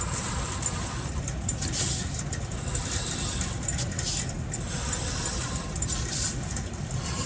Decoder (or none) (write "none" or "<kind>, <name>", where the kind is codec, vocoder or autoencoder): none